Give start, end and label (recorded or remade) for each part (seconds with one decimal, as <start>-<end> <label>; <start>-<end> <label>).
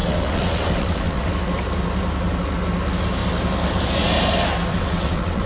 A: 0.0-1.3 remade; 1.3-4.7 recorded; 4.7-5.5 remade